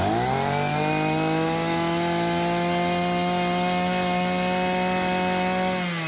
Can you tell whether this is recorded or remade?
recorded